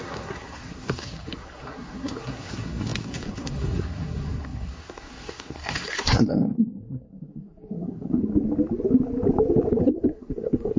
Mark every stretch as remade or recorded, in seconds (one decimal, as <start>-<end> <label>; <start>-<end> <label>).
0.0-8.2 remade; 8.2-9.8 recorded; 9.8-10.8 remade